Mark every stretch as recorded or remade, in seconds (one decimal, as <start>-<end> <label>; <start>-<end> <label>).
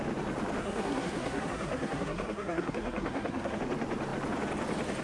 0.0-0.6 recorded; 0.6-3.6 remade; 3.6-5.0 recorded